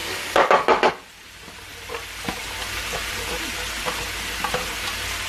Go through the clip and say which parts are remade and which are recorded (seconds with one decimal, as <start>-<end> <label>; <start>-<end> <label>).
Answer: 0.0-0.9 remade; 0.9-5.3 recorded

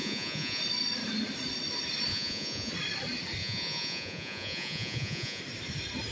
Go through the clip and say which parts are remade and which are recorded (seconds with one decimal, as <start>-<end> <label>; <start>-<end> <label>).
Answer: 0.0-0.6 remade; 0.6-2.1 recorded; 2.1-2.7 remade; 2.7-3.4 recorded; 3.4-5.4 remade; 5.4-6.1 recorded